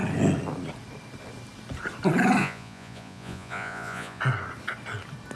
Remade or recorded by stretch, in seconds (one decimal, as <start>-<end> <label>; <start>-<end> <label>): 0.0-2.4 recorded; 2.4-4.2 remade; 4.2-5.3 recorded